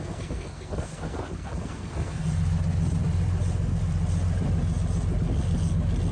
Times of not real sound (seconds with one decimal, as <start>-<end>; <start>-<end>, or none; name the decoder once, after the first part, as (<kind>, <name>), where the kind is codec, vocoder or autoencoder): 0.0-2.2 (codec, SNAC)